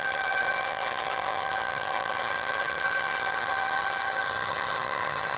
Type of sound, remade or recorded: remade